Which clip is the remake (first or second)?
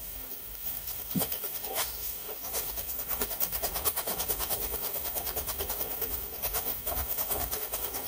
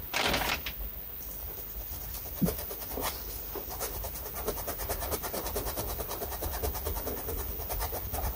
first